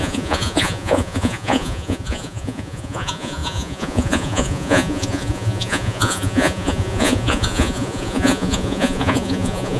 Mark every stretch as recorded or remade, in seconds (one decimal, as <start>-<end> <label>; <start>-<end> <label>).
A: 0.0-9.8 remade